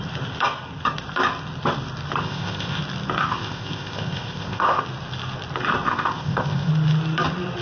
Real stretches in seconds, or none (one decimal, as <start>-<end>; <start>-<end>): 0.0-2.2; 2.8-3.2; 4.8-5.9; 6.7-7.6